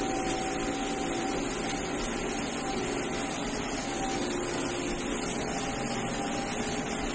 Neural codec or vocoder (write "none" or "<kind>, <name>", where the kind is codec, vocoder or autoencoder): none